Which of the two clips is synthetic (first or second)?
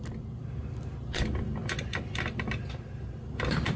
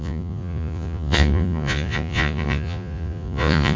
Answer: second